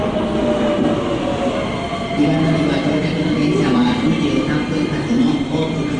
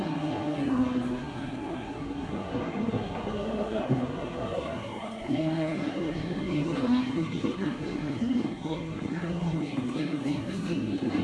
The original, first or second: first